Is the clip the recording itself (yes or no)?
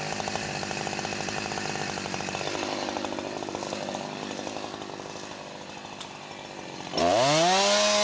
yes